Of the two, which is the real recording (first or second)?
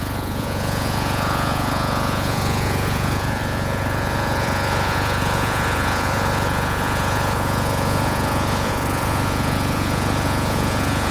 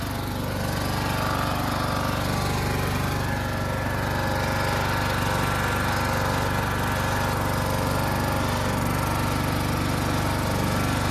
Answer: second